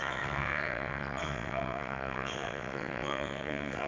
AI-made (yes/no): yes